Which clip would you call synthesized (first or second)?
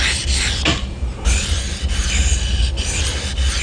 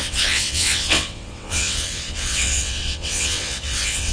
second